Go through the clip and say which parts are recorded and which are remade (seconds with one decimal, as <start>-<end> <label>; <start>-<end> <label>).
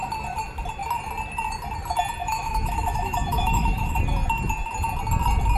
0.0-2.2 recorded; 2.2-4.0 remade; 4.0-5.6 recorded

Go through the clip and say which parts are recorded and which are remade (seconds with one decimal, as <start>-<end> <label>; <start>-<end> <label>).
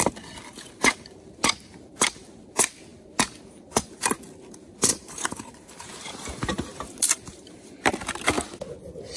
0.0-4.9 recorded; 4.9-7.9 remade; 7.9-9.2 recorded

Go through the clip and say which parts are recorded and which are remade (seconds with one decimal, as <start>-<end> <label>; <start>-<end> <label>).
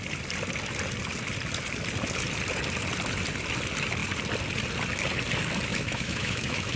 0.0-5.7 recorded; 5.7-6.8 remade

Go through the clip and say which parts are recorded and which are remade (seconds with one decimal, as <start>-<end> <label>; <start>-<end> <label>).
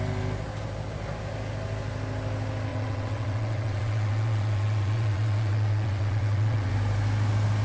0.0-2.7 recorded; 2.7-6.7 remade; 6.7-7.6 recorded